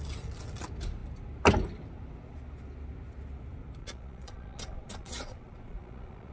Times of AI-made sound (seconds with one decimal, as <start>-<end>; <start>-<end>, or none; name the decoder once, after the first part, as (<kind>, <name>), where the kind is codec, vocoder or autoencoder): 3.8-6.3 (vocoder, Vocos)